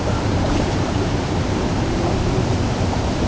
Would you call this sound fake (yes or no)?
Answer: yes